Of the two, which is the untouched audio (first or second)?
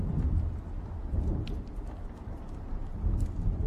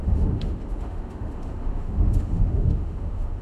first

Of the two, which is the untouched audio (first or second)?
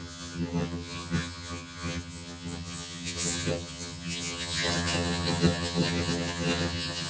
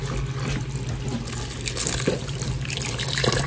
second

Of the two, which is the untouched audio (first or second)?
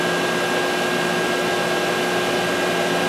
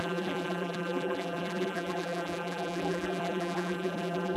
first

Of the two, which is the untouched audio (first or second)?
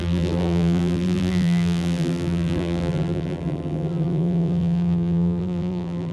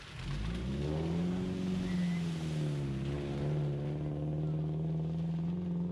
second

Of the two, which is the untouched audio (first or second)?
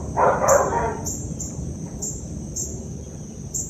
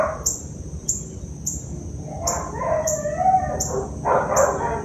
second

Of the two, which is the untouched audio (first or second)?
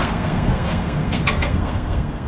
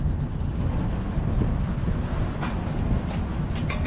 second